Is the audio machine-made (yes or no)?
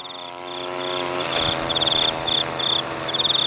no